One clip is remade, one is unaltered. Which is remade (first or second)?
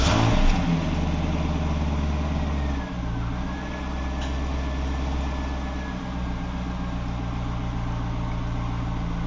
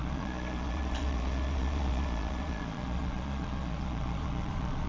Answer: second